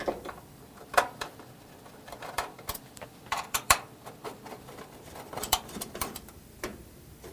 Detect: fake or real fake